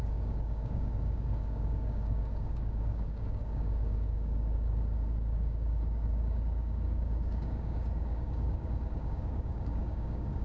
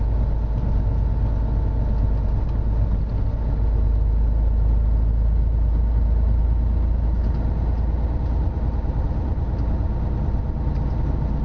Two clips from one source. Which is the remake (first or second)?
first